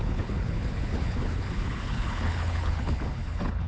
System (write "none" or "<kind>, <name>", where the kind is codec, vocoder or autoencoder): codec, HILCodec